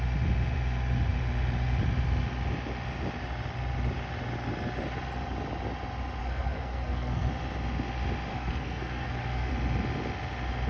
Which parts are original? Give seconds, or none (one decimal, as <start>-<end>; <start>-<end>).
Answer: 0.0-6.2; 7.3-8.3; 9.5-10.7